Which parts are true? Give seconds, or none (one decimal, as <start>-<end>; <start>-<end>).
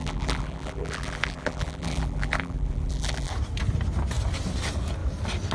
3.3-5.5